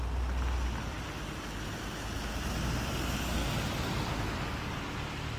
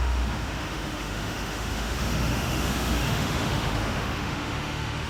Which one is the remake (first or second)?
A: second